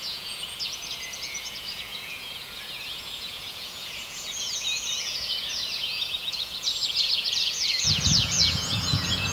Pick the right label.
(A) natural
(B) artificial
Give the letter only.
B